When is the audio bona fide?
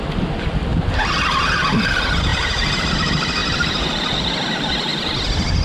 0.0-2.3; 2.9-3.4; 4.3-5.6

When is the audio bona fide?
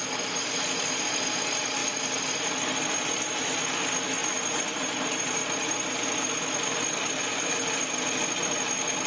0.0-4.2; 7.8-9.1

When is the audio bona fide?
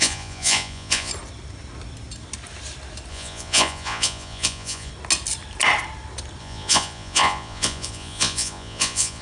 1.1-3.1; 4.9-6.4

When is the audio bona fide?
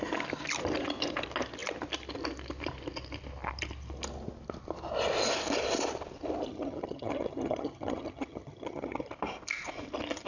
0.0-6.5; 9.1-10.3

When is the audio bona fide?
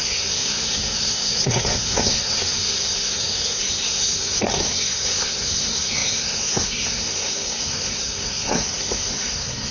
none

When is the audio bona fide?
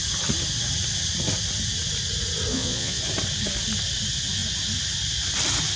0.0-2.5; 3.0-5.8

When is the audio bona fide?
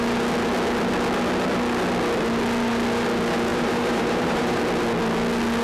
0.0-3.5; 4.6-5.6